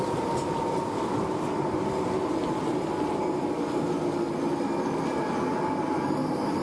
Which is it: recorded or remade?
recorded